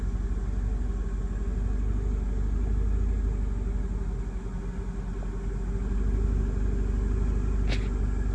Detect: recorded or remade recorded